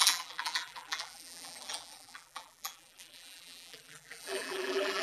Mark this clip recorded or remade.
remade